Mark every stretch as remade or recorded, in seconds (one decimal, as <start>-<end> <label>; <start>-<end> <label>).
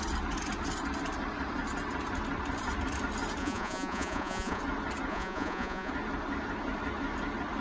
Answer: 0.0-3.4 recorded; 3.4-4.6 remade; 4.6-5.1 recorded; 5.1-5.9 remade; 5.9-7.6 recorded